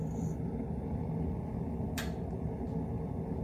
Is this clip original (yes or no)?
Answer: yes